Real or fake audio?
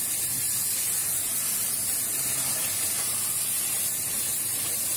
real